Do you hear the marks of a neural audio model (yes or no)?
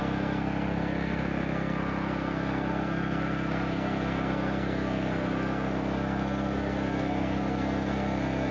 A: yes